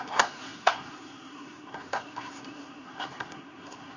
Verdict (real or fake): fake